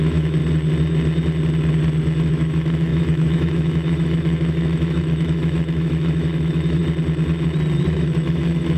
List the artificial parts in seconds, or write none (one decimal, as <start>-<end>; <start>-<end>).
0.0-0.4; 2.3-6.8; 7.8-8.8